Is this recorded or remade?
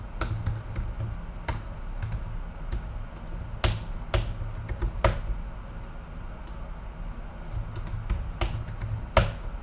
recorded